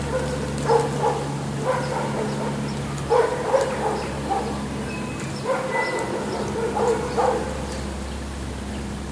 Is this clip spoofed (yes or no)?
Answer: no